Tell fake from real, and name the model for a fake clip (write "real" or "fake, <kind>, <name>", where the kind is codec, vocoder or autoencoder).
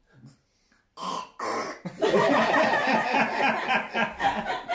real